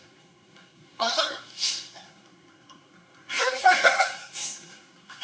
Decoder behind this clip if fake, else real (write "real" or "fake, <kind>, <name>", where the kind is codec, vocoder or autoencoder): fake, codec, SNAC